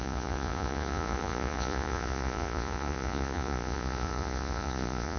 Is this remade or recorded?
remade